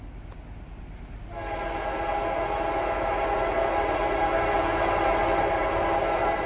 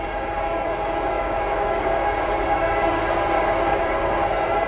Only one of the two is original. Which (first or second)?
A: first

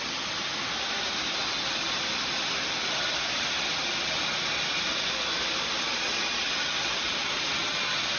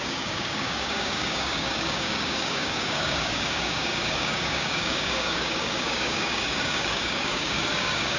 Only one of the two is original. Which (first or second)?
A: first